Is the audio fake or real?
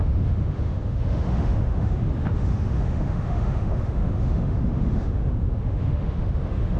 fake